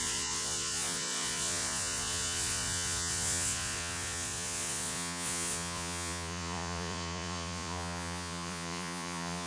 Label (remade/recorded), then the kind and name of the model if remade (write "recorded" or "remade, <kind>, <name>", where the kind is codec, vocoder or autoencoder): remade, vocoder, Vocos